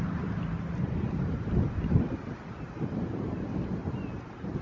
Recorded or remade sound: recorded